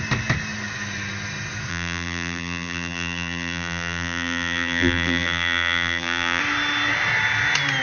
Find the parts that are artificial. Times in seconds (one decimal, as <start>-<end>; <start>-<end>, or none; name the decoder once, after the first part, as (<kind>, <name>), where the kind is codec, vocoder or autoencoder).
1.7-6.4 (vocoder, BigVGAN v2)